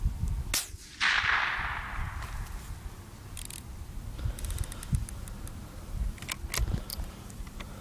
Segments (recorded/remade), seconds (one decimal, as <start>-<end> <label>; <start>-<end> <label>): 0.0-6.9 recorded; 6.9-7.8 remade